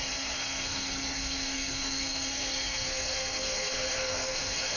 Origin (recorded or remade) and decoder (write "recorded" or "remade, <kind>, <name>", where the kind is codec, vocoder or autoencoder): remade, codec, SNAC